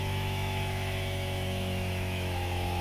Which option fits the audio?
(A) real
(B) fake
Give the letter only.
B